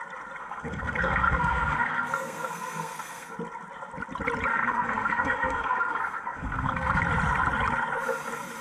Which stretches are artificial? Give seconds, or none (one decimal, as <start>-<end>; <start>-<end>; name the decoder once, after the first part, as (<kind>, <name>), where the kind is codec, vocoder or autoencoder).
0.4-3.3 (codec, SNAC); 4.5-7.0